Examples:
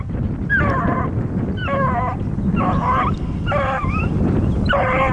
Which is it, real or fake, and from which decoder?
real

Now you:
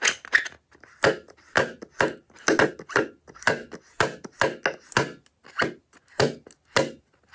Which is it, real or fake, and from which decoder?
real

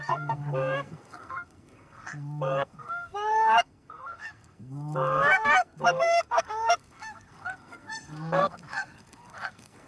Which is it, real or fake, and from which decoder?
fake, codec, SNAC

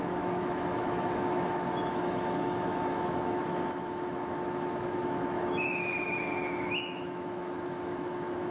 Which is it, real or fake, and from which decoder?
fake, autoencoder, DAC-VAE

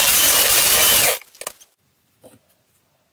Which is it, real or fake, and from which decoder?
real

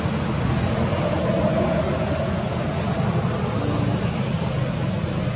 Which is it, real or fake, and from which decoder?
real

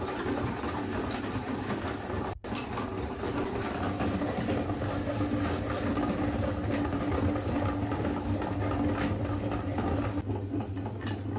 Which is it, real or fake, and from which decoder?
real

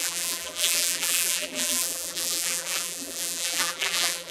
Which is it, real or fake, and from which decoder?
fake, vocoder, BigVGAN v2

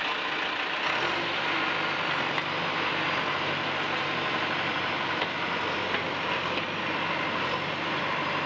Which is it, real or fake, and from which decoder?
real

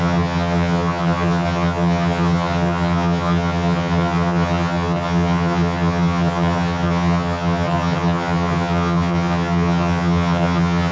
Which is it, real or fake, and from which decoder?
fake, vocoder, HiFi-GAN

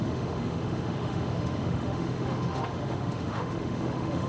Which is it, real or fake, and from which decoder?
fake, autoencoder, DAC-VAE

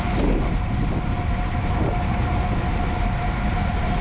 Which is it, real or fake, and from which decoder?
real